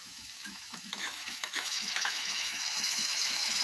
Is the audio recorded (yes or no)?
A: no